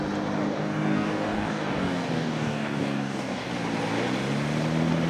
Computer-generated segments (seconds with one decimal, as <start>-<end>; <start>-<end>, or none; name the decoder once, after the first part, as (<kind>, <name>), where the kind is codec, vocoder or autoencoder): 0.4-3.5 (codec, DAC)